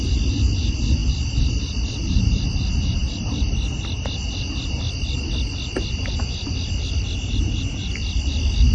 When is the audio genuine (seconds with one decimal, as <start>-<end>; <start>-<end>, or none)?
0.0-8.7